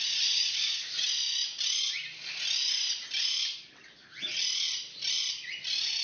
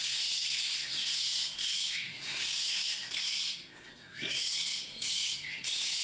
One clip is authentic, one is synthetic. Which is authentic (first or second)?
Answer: first